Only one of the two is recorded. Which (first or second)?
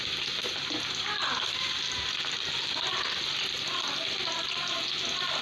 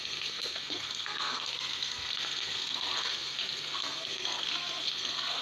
first